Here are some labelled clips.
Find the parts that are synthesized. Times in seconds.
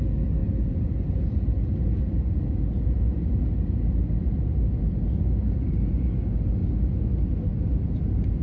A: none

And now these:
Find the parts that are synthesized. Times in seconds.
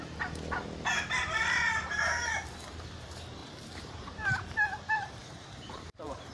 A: 3.4-4.8 (vocoder, BigVGAN v2); 5.2-6.3